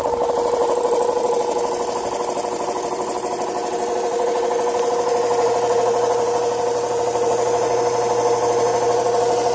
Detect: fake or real real